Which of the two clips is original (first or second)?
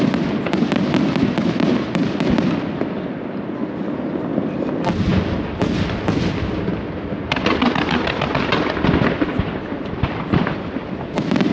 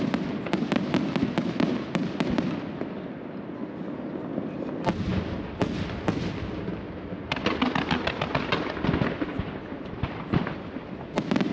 second